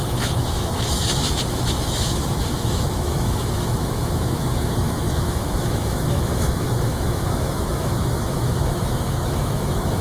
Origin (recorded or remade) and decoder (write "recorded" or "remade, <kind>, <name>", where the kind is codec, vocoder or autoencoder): remade, autoencoder, DAC-VAE